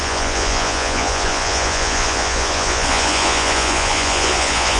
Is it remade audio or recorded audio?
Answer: remade